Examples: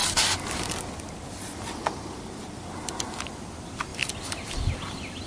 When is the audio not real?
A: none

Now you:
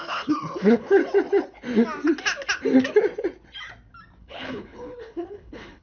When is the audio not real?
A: 0.0-1.0; 4.2-5.8

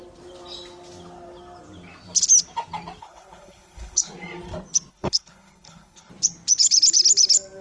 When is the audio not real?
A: 3.0-4.1; 4.9-6.1

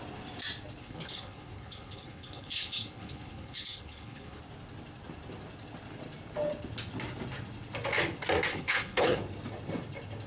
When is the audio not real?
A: 0.8-4.4; 8.5-9.2

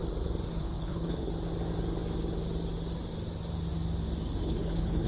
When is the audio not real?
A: 0.6-1.3; 4.4-5.1

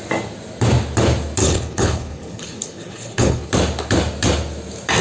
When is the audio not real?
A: 1.4-3.5